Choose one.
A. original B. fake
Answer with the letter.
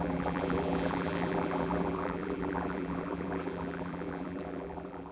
B